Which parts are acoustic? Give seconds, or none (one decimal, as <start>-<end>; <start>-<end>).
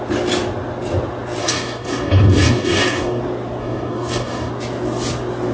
0.0-1.4; 3.2-3.6; 4.5-5.5